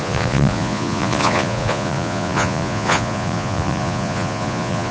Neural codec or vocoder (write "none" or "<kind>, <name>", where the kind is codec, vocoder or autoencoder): vocoder, Vocos